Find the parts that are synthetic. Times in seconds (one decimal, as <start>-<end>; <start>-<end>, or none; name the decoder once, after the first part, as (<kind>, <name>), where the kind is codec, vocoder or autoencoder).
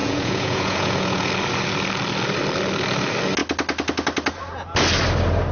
0.0-1.3 (vocoder, Vocos)